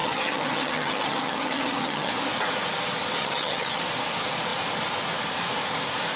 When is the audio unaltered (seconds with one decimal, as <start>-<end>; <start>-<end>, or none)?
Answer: 2.1-3.2; 3.8-6.2